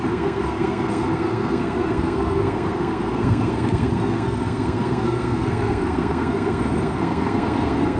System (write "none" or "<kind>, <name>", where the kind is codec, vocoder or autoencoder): codec, SNAC